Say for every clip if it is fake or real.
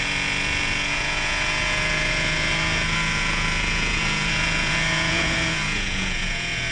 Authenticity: fake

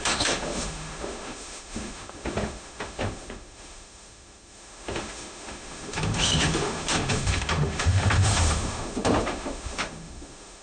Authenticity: fake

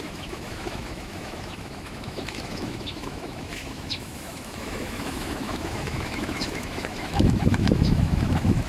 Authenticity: fake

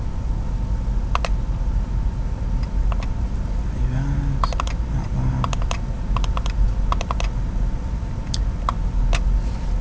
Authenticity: real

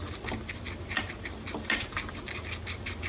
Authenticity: real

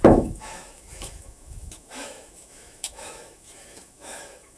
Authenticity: fake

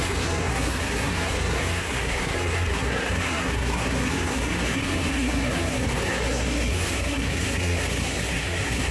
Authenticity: fake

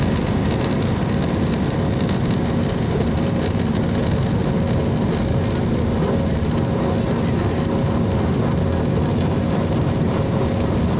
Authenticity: real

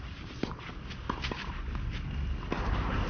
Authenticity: real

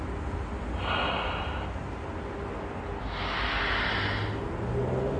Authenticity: real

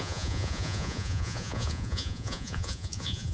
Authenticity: fake